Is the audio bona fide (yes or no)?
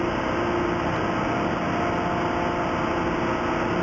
yes